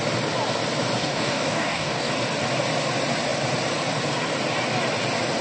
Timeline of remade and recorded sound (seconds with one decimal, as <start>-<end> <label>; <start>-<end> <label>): 0.0-1.0 recorded; 1.0-2.1 remade; 2.1-5.4 recorded